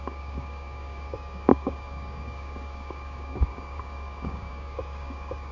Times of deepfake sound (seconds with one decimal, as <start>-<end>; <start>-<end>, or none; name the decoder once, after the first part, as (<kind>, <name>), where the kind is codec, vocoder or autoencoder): 0.0-5.5 (codec, DAC)